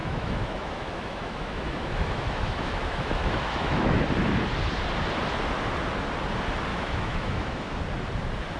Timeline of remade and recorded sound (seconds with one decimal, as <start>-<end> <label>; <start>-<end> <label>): 0.0-4.0 remade; 4.0-6.7 recorded; 6.7-7.8 remade; 7.8-8.6 recorded